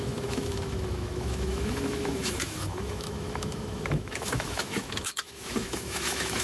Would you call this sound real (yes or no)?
no